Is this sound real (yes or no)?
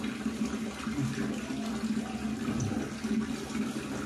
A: yes